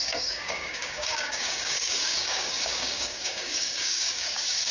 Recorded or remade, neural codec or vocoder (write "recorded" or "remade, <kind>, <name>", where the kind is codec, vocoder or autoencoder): remade, codec, DAC